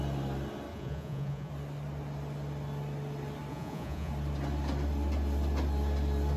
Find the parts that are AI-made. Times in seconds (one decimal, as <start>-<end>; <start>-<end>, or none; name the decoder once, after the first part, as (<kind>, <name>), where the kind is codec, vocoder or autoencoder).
0.7-1.5 (vocoder, Vocos); 3.5-4.1